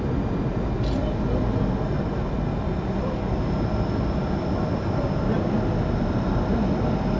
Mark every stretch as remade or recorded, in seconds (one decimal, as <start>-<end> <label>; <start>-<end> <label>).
0.0-7.2 recorded